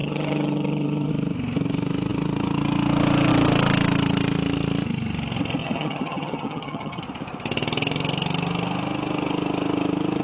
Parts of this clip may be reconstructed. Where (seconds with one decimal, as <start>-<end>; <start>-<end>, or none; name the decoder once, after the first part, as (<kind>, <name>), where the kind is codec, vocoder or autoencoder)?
0.0-1.1 (vocoder, HiFi-GAN); 5.6-7.0